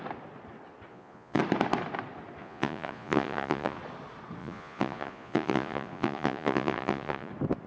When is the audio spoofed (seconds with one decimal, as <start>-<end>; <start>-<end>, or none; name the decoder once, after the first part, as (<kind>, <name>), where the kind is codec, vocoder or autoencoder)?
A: 0.9-1.4 (vocoder, Vocos); 2.4-3.8; 4.4-7.3